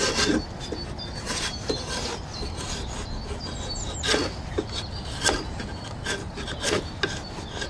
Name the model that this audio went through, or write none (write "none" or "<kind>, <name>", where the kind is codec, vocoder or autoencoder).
none